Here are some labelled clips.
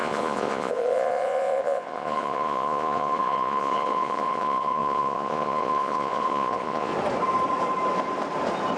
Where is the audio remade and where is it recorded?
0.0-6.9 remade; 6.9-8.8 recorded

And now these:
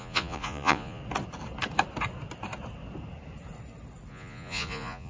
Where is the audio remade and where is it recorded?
0.0-1.0 remade; 1.0-4.1 recorded; 4.1-5.1 remade

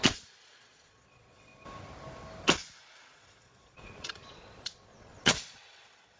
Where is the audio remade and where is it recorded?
0.0-1.5 remade; 1.5-3.1 recorded; 3.1-6.2 remade

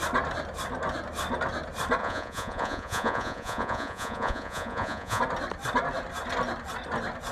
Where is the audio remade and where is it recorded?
0.0-2.0 recorded; 2.0-5.2 remade; 5.2-7.3 recorded

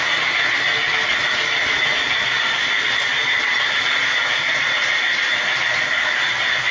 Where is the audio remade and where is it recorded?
0.0-6.7 recorded

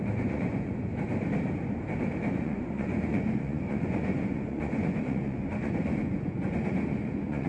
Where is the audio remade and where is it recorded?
0.0-0.9 remade; 0.9-2.3 recorded; 2.3-7.5 remade